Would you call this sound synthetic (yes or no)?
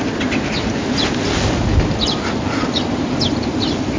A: no